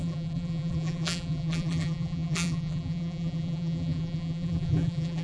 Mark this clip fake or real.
fake